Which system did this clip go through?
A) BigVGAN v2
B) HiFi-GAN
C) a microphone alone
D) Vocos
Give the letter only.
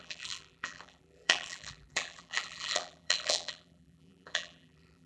A